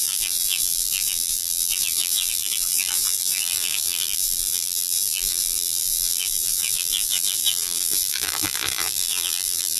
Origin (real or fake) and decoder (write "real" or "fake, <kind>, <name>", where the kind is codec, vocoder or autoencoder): fake, vocoder, BigVGAN v2